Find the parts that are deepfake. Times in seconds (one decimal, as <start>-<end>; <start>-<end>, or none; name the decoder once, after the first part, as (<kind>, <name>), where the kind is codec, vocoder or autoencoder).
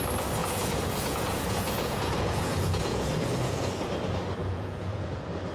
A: 0.4-3.7 (vocoder, Vocos); 4.4-5.1